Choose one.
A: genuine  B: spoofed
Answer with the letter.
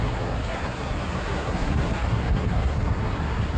B